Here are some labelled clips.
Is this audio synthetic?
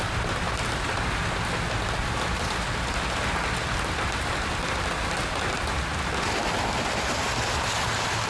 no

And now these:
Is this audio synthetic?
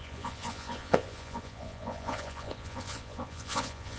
yes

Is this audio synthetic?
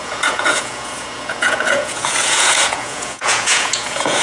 yes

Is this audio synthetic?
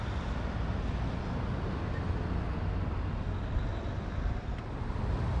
no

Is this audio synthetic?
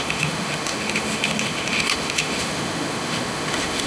yes